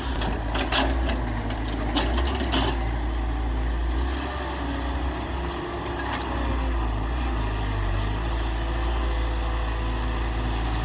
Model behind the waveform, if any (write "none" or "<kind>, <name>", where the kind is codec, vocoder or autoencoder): none